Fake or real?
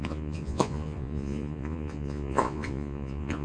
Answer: fake